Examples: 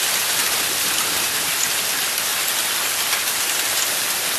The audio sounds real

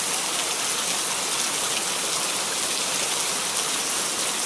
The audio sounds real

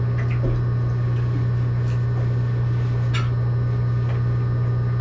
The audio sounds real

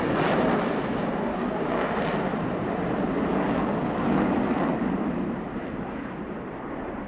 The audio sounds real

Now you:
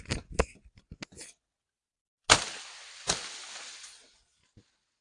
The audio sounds real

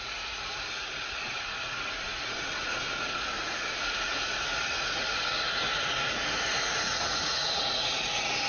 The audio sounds fake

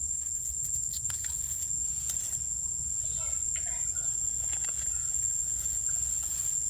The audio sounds fake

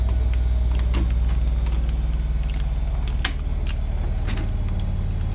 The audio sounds real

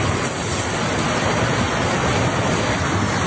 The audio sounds real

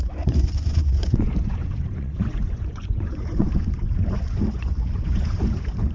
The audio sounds fake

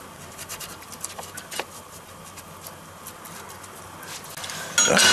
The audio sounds real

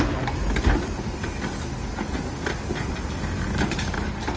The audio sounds real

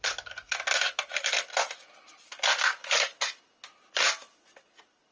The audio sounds real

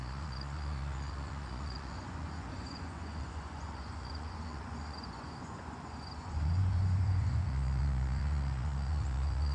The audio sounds fake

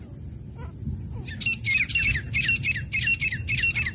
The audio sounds real